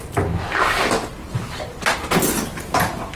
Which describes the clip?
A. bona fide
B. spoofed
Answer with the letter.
A